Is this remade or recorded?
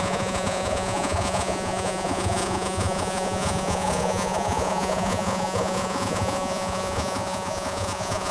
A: remade